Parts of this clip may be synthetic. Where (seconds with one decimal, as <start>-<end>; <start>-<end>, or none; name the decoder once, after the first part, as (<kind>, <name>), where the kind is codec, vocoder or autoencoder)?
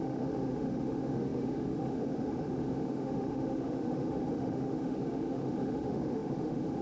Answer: 0.0-6.8 (autoencoder, DAC-VAE)